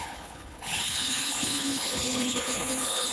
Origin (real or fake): fake